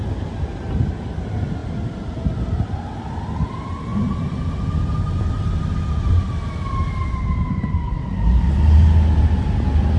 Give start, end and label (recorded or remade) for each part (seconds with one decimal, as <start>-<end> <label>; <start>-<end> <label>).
0.0-10.0 recorded